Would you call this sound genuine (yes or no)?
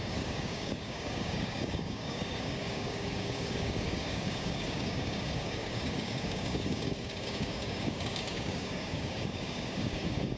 no